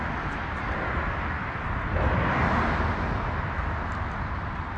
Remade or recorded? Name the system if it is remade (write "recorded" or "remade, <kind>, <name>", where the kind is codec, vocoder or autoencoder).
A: recorded